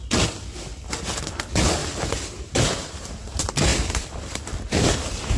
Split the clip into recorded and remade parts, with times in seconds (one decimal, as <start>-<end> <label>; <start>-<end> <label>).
0.0-0.7 recorded; 0.7-1.2 remade; 1.2-1.8 recorded; 1.8-2.9 remade; 2.9-3.7 recorded; 3.7-4.9 remade; 4.9-5.4 recorded